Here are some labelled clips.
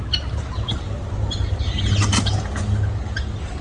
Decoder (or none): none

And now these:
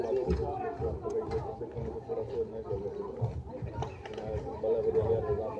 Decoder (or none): none